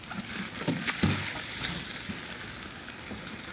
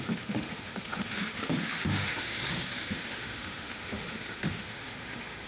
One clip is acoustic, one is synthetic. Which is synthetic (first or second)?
second